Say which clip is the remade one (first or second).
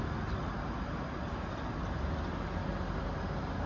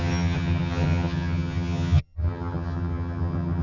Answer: second